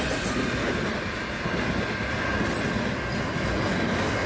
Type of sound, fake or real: real